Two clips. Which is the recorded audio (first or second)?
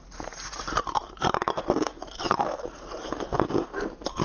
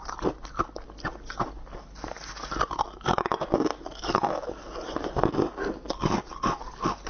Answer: second